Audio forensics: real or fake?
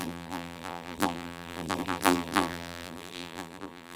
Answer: fake